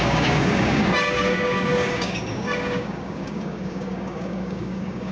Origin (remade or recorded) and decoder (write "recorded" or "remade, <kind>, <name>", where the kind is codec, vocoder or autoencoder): remade, codec, DAC